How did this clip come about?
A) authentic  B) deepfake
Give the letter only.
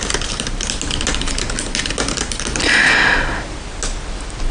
A